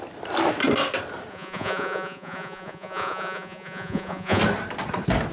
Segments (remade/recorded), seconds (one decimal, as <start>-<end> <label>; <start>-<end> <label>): 0.0-1.3 recorded; 1.3-4.4 remade; 4.4-5.3 recorded